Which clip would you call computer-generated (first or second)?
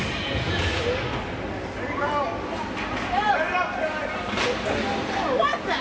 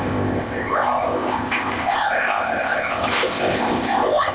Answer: second